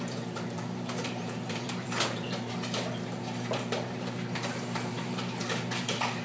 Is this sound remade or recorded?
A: remade